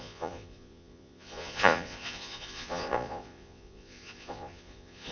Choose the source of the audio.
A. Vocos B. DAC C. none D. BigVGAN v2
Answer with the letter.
A